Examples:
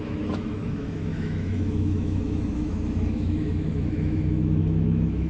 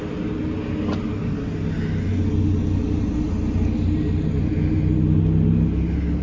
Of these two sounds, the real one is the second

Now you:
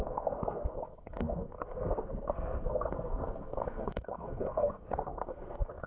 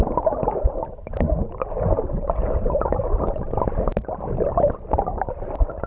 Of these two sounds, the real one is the second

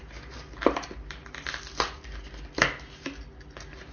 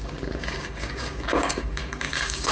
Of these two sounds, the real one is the first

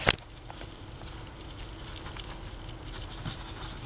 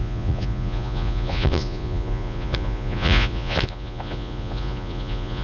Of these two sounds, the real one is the first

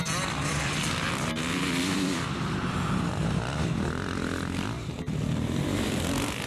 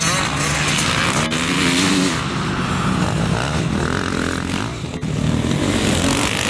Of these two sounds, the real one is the second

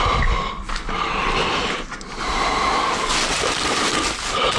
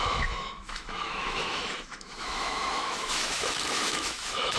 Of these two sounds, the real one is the first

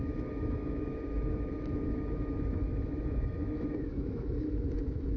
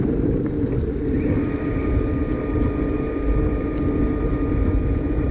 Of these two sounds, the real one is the second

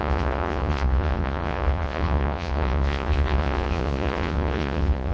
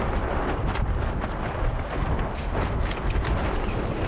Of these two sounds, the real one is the second